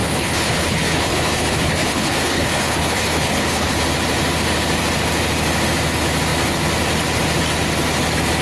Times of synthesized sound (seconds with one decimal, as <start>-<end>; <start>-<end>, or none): 0.0-3.7